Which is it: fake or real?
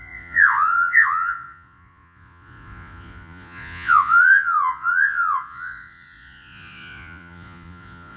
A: fake